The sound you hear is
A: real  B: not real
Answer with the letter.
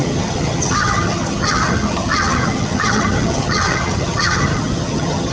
B